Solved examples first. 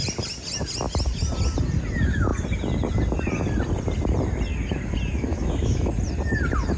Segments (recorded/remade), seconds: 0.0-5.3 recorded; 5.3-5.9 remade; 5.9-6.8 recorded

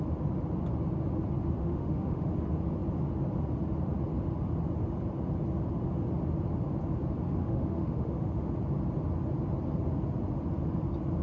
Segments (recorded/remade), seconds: 0.0-1.6 recorded; 1.6-2.3 remade; 2.3-7.4 recorded; 7.4-8.5 remade; 8.5-11.2 recorded

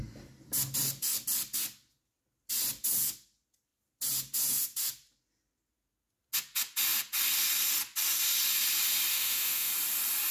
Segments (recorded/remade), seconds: 0.0-9.1 recorded; 9.1-9.7 remade; 9.7-10.3 recorded

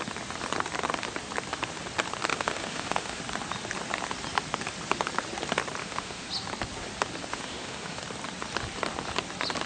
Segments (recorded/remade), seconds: 0.0-2.3 recorded; 2.3-3.2 remade; 3.2-5.8 recorded; 5.8-6.3 remade; 6.3-7.3 recorded; 7.3-8.0 remade; 8.0-9.7 recorded

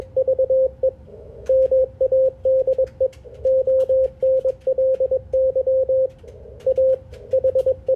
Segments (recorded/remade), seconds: 0.0-1.1 recorded; 1.1-1.8 remade; 1.8-8.0 recorded

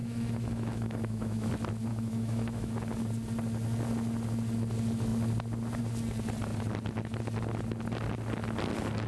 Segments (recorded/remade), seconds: 0.0-1.5 remade; 1.5-1.9 recorded; 1.9-2.7 remade; 2.7-9.1 recorded

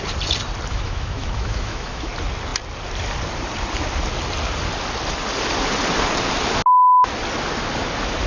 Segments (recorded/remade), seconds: 0.0-0.7 recorded; 0.7-2.1 remade; 2.1-8.3 recorded

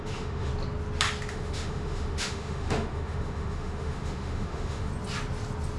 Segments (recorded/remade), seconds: 0.0-0.5 remade; 0.5-1.3 recorded; 1.3-4.9 remade; 4.9-5.8 recorded